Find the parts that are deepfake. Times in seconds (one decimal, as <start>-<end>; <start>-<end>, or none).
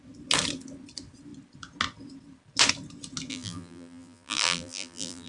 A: 3.3-5.3